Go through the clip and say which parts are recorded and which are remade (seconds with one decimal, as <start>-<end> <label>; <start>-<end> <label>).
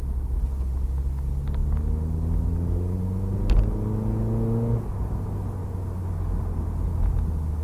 0.0-7.6 recorded